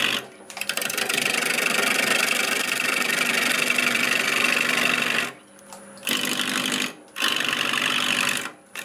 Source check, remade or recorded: remade